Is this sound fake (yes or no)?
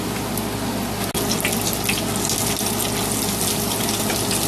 no